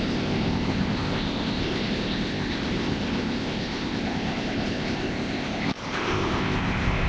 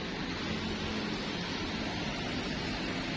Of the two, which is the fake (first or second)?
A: first